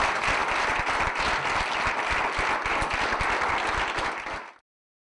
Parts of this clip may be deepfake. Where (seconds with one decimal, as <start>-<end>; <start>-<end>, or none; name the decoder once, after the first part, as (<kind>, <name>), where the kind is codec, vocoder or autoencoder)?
none